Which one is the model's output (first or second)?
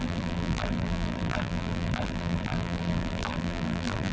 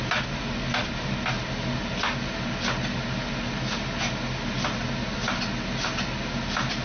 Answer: first